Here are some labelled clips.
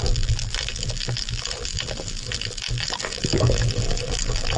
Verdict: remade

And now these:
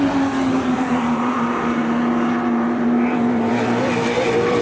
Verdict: remade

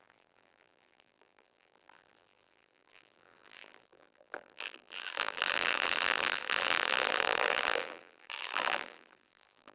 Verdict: remade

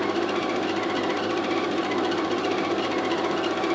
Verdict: recorded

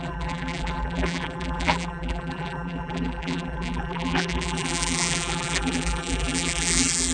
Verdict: remade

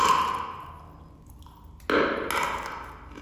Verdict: recorded